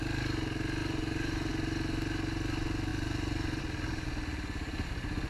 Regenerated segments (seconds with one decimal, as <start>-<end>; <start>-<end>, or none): 0.8-1.5; 2.9-3.6